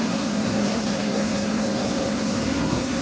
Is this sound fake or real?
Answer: fake